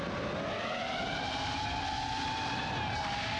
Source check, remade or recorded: recorded